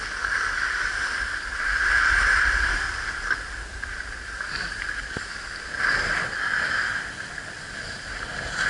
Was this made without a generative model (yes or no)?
yes